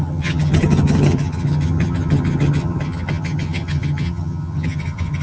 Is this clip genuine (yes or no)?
no